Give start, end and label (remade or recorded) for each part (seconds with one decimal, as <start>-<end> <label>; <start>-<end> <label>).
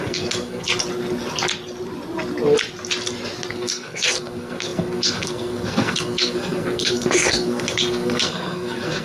0.0-0.7 remade; 0.7-3.5 recorded; 3.5-9.0 remade